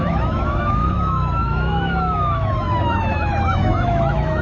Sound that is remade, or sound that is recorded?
remade